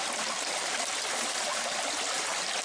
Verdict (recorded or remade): recorded